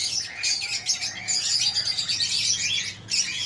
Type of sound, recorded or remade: remade